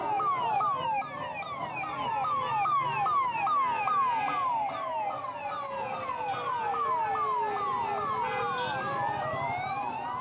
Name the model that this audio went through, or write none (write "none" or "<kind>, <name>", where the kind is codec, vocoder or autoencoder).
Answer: none